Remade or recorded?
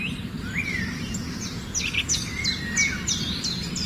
recorded